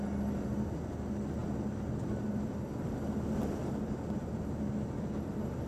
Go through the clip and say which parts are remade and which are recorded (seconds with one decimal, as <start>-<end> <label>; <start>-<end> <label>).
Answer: 0.0-1.4 recorded; 1.4-4.2 remade; 4.2-5.7 recorded